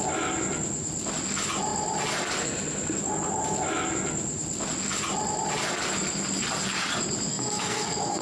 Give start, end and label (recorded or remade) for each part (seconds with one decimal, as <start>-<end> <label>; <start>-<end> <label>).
0.0-7.3 recorded; 7.3-8.2 remade